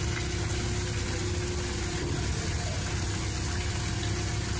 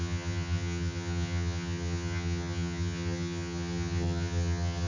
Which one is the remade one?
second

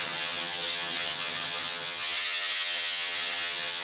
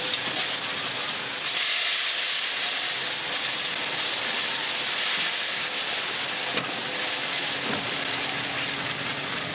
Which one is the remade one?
first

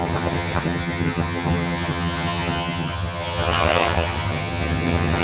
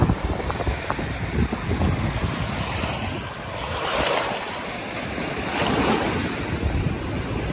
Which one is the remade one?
first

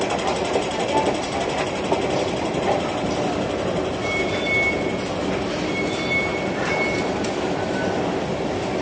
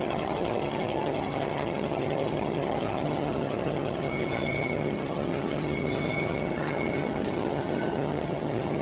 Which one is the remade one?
second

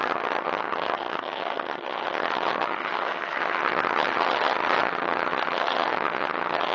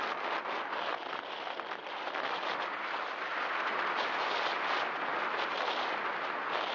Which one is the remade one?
first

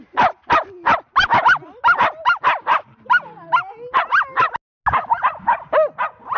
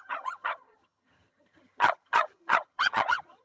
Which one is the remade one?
second